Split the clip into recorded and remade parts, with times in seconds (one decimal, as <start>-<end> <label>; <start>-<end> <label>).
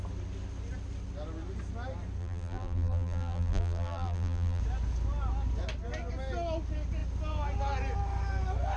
0.0-2.2 recorded; 2.2-4.6 remade; 4.6-8.8 recorded